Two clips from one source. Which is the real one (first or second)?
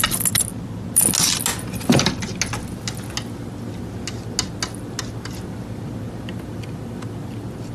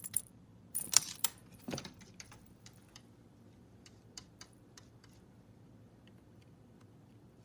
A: first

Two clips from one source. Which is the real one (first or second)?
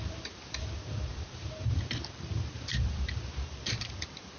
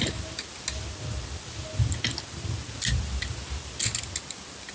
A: second